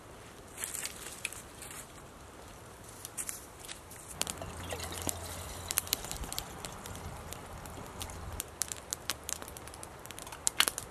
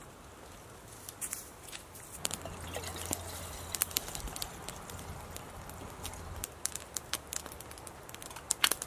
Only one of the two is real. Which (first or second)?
second